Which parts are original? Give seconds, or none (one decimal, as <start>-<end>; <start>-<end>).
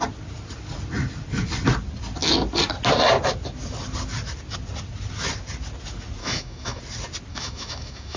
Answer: 0.0-6.2; 6.8-7.3